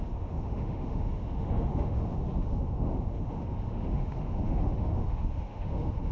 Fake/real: fake